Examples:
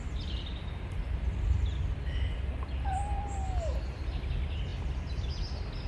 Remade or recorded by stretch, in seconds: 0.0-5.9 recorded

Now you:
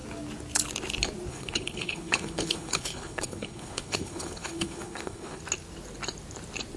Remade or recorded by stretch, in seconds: 0.0-1.3 recorded; 1.3-5.4 remade; 5.4-6.8 recorded

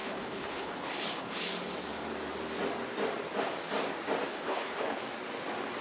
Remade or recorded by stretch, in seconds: 0.0-1.4 remade; 1.4-4.3 recorded; 4.3-5.0 remade; 5.0-5.8 recorded

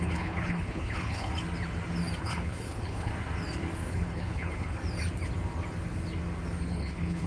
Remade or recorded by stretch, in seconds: 0.0-1.3 remade; 1.3-2.2 recorded; 2.2-3.1 remade; 3.1-3.9 recorded; 3.9-4.8 remade; 4.8-6.7 recorded; 6.7-7.3 remade

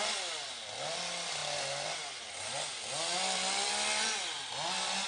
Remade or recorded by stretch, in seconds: 0.0-5.1 recorded

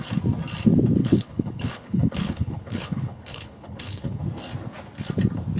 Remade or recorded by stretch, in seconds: 0.0-1.0 recorded; 1.0-4.2 remade; 4.2-5.6 recorded